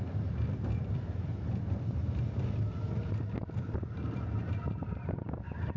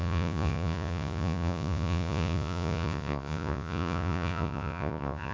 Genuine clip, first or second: first